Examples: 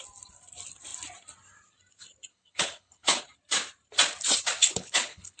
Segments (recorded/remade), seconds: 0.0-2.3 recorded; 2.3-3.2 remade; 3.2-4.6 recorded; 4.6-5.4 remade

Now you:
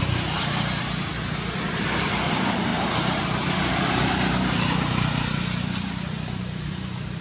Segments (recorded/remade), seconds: 0.0-1.1 remade; 1.1-2.1 recorded; 2.1-7.2 remade

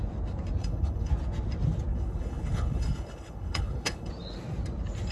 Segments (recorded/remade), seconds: 0.0-0.6 recorded; 0.6-1.1 remade; 1.1-1.9 recorded; 1.9-4.1 remade; 4.1-5.1 recorded

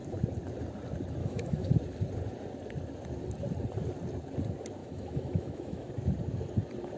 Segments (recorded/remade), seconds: 0.0-1.2 recorded; 1.2-1.7 remade; 1.7-4.8 recorded; 4.8-5.9 remade; 5.9-7.0 recorded

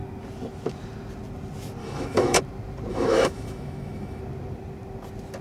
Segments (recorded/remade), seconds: 0.0-1.8 recorded; 1.8-2.4 remade; 2.4-2.9 recorded; 2.9-4.2 remade; 4.2-5.4 recorded

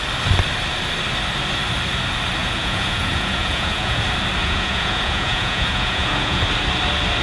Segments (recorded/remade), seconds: 0.0-2.4 recorded; 2.4-4.0 remade; 4.0-4.4 recorded; 4.4-6.4 remade; 6.4-7.2 recorded